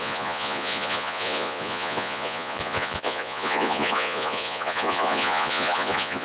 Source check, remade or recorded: remade